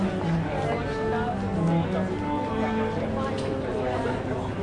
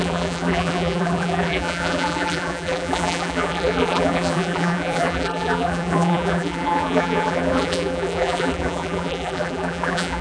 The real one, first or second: first